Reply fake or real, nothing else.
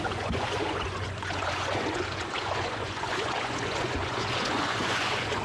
fake